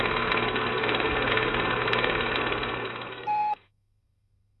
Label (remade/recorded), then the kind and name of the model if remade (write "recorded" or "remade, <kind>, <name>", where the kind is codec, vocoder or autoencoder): remade, codec, SNAC